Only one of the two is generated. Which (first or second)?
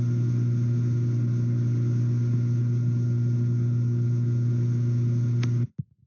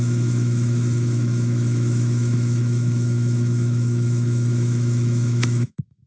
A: second